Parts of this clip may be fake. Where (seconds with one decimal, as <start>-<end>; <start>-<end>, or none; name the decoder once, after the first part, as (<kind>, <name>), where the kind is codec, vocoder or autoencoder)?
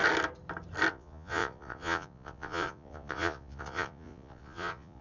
0.9-5.0 (vocoder, Vocos)